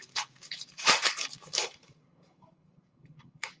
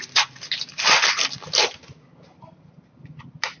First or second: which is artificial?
first